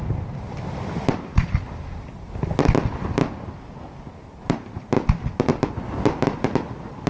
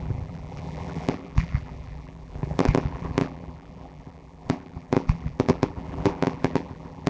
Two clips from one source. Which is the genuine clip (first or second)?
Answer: first